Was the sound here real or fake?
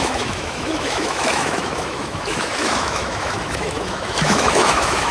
fake